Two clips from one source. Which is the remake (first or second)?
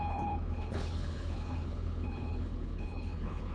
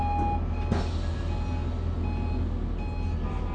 first